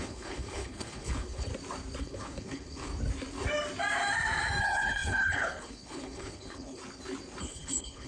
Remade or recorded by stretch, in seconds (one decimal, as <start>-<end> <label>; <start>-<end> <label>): 0.0-1.5 remade; 1.5-2.0 recorded; 2.0-2.9 remade; 2.9-4.6 recorded; 4.6-6.8 remade; 6.8-7.4 recorded; 7.4-8.1 remade